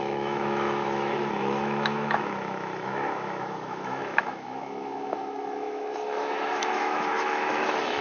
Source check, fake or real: fake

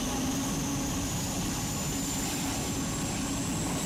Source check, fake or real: real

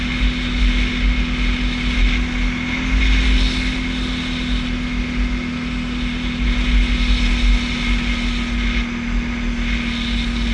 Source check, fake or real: real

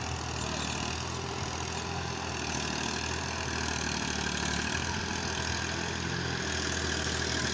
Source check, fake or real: real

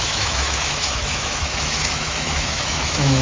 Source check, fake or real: fake